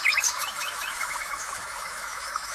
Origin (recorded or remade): remade